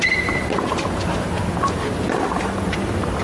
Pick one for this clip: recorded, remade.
recorded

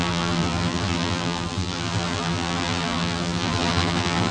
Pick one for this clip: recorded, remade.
remade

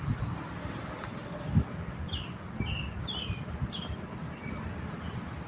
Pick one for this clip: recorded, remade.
recorded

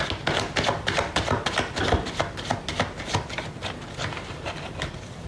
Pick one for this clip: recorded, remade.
recorded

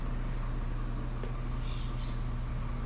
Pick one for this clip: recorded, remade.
recorded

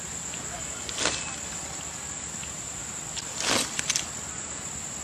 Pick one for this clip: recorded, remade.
recorded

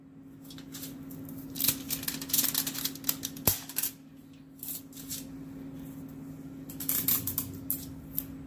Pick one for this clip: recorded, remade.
recorded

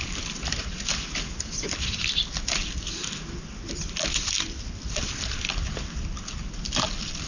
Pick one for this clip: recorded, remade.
recorded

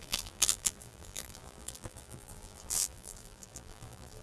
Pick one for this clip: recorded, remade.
remade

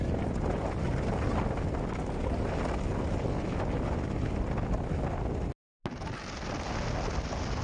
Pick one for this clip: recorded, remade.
recorded